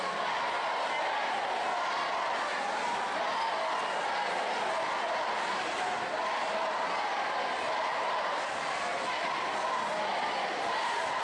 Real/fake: real